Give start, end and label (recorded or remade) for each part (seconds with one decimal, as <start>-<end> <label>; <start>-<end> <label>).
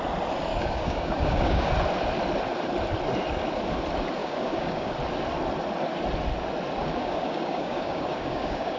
0.0-0.5 recorded; 0.5-1.7 remade; 1.7-4.2 recorded; 4.2-4.9 remade; 4.9-6.8 recorded; 6.8-8.8 remade